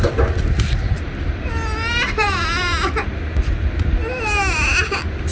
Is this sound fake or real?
real